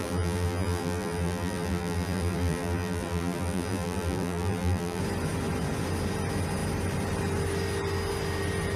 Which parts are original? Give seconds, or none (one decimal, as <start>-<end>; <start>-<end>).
5.0-8.8